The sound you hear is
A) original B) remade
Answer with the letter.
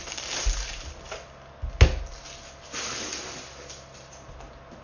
A